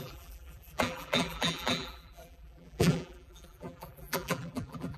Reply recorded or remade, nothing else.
remade